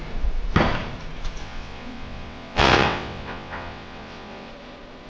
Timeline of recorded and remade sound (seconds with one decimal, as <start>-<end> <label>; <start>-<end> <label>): 0.0-1.4 recorded; 1.4-4.5 remade; 4.5-5.1 recorded